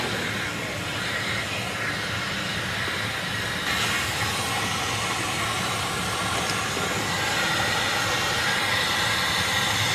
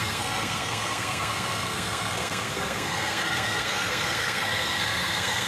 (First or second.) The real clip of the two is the first